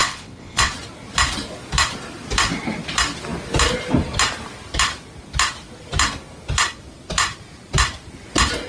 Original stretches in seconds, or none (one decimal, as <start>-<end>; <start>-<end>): 0.7-8.7